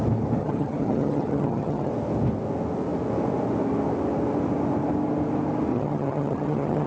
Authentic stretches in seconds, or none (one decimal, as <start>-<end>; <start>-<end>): 0.0-0.4; 1.9-5.7

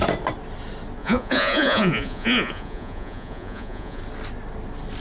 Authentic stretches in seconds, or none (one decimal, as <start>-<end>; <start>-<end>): 0.0-1.0; 4.0-5.0

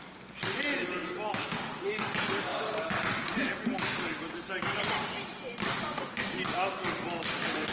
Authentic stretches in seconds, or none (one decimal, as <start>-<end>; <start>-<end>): 0.0-7.7

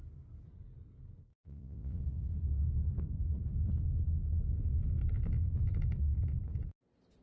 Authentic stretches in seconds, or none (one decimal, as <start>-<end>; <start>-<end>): 0.0-1.3; 2.0-7.2

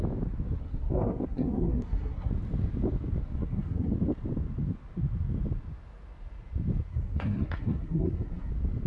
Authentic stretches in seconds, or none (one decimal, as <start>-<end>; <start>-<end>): 0.0-0.6; 2.3-3.2; 3.9-6.9; 8.5-8.9